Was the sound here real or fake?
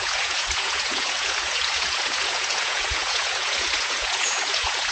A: fake